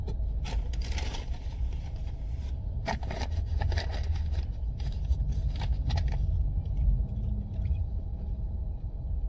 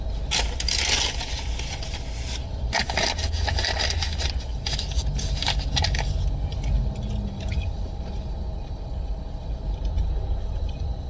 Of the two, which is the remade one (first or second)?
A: first